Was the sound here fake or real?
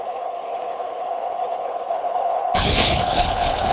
fake